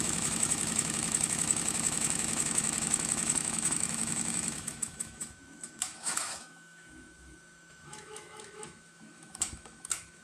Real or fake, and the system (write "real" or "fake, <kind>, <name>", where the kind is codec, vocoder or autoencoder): fake, autoencoder, DAC-VAE